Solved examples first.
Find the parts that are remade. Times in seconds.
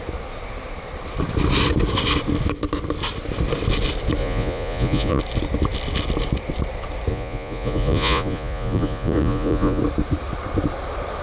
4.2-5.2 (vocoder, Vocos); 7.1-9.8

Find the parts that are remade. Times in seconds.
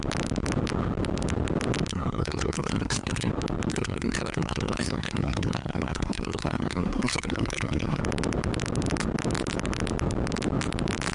1.9-3.3 (codec, SNAC); 3.7-8.0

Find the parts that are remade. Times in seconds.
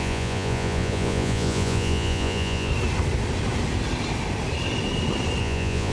0.0-2.7 (vocoder, Vocos); 5.4-5.9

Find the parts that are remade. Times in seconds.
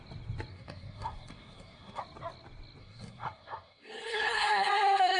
0.5-2.0 (codec, SNAC); 2.8-5.2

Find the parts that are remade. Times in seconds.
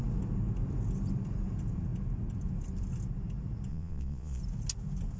3.7-4.4 (vocoder, Vocos)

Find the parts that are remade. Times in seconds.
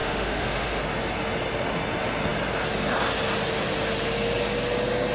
0.0-0.8 (autoencoder, DAC-VAE)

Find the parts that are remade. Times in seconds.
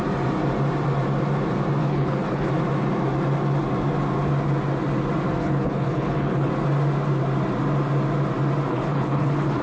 1.8-2.5 (codec, HILCodec); 5.4-6.5; 8.7-9.6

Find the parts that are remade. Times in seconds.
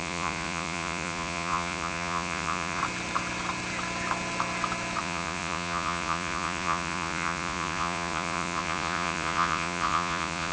0.0-2.8 (vocoder, Vocos); 5.0-10.5